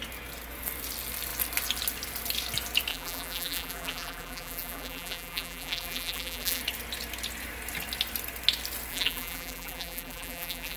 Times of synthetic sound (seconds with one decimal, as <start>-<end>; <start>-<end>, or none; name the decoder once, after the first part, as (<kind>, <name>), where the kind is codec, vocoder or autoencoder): 2.9-6.6 (vocoder, BigVGAN v2); 8.9-10.8